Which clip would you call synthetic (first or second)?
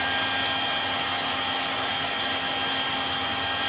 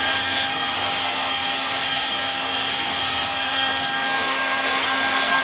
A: second